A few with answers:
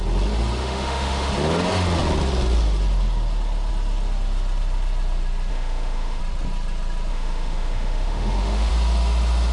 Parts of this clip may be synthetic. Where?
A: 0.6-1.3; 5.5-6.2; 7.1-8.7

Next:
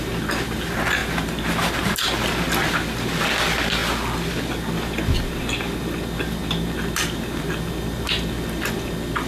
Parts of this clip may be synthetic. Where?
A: none

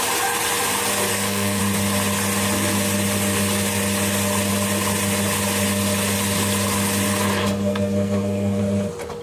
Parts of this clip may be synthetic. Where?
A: 1.1-1.6; 7.4-8.6

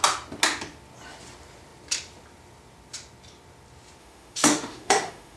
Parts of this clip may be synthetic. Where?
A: 4.0-5.4

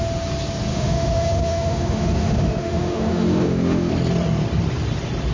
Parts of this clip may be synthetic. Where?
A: 0.7-3.9